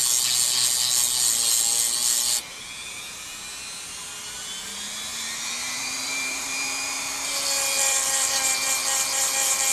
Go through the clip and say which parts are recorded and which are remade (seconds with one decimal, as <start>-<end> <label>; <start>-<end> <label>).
0.0-5.1 recorded; 5.1-7.3 remade; 7.3-9.7 recorded